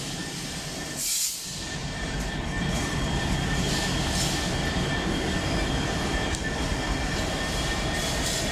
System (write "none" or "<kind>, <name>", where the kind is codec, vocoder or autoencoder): none